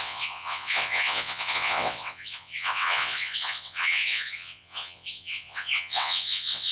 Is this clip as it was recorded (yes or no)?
no